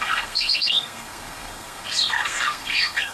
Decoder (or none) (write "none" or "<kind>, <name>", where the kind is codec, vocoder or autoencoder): codec, SNAC